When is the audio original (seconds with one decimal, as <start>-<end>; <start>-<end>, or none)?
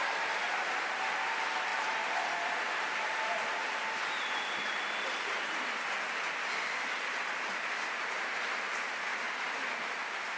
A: 0.0-10.4